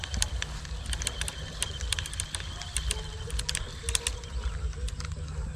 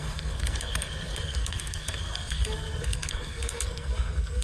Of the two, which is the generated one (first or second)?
second